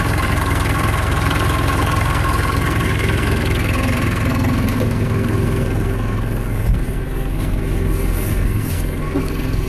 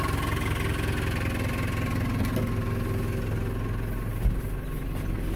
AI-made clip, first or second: first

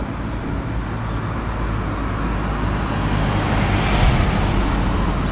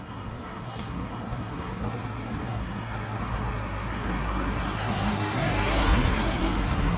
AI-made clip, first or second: second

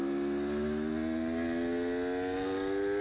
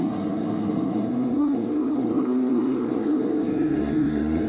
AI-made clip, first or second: second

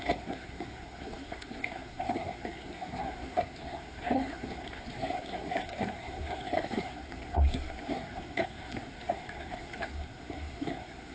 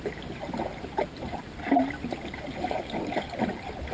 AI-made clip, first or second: first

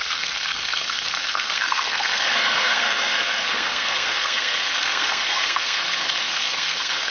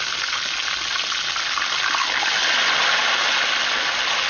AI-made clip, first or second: first